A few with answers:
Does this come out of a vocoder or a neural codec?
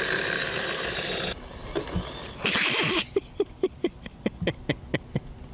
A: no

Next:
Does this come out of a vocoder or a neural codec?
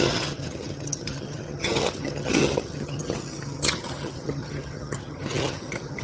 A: yes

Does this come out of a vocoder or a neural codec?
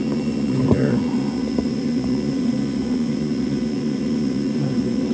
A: yes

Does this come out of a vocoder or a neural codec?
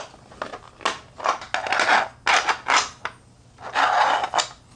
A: no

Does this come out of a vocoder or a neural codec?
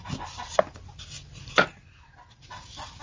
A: no